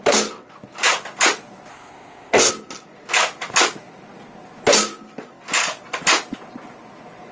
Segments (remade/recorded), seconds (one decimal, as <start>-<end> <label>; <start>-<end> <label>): 0.0-1.7 recorded; 1.7-2.5 remade; 2.5-7.3 recorded